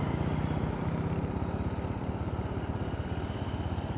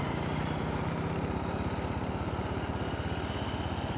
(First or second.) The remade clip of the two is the first